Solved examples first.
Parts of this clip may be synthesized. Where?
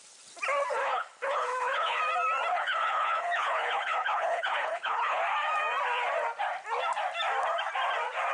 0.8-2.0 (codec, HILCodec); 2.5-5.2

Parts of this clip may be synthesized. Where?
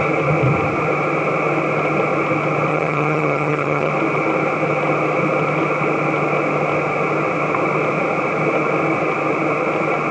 2.7-3.9 (vocoder, HiFi-GAN)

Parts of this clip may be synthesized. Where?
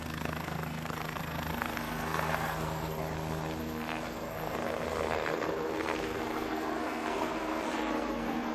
0.0-3.0 (codec, SNAC); 3.6-8.5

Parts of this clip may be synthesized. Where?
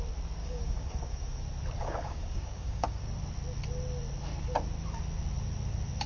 0.4-1.4 (codec, DAC); 1.8-3.1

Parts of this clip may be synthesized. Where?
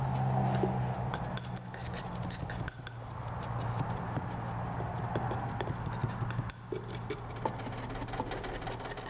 none